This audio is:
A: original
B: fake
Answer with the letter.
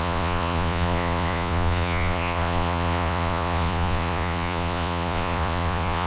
B